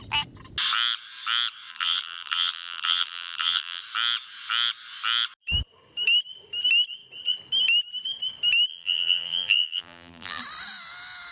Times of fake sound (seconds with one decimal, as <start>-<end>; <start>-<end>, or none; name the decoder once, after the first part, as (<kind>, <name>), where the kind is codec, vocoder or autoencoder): 1.7-3.8 (vocoder, BigVGAN v2); 8.7-10.4